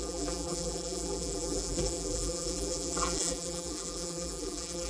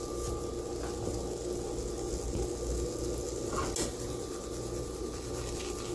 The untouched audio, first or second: second